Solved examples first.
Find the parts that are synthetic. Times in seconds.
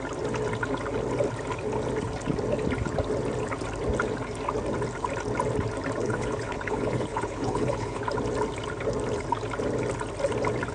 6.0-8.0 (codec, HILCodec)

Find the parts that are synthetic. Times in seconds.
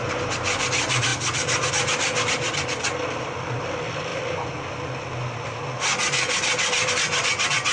none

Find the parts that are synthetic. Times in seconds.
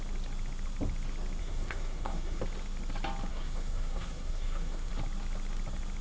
1.4-2.4 (codec, SNAC); 3.3-4.9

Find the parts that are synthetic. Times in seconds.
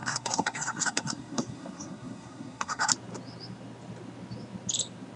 0.0-2.9 (codec, SNAC)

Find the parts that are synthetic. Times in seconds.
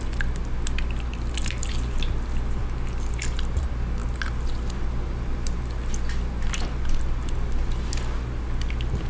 none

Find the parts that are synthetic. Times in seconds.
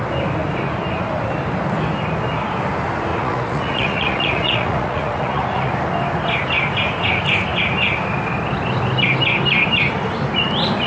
3.1-5.7 (vocoder, Vocos)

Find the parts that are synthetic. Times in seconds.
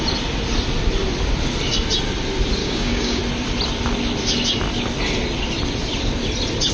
2.6-3.2 (codec, DAC)